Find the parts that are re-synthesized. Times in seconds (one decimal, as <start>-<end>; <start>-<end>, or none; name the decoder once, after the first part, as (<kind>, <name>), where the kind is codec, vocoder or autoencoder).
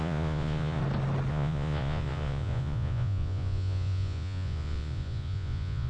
0.0-0.8 (vocoder, Vocos); 1.3-5.9